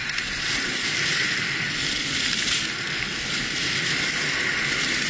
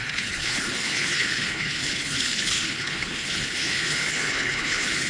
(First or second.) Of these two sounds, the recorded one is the first